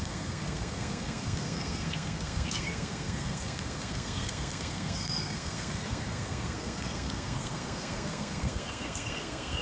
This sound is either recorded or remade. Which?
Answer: remade